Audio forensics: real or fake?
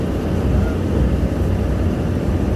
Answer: real